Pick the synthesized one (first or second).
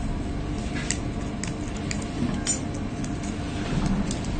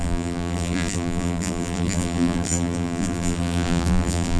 second